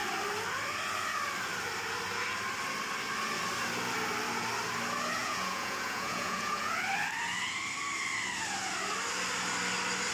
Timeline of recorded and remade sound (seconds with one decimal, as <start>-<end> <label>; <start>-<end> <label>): 0.0-5.2 recorded; 5.2-6.7 remade; 6.7-10.1 recorded